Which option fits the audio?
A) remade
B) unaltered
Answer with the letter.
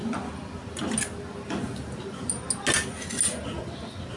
B